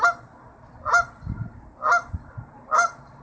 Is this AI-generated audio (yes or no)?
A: no